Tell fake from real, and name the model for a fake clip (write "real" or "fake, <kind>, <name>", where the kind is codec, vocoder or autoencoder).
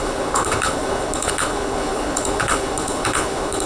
fake, codec, HILCodec